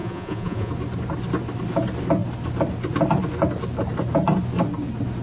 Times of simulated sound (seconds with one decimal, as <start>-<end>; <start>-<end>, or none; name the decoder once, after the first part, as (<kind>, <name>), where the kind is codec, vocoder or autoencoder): 0.0-0.7 (vocoder, Vocos)